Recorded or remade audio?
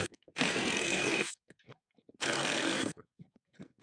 remade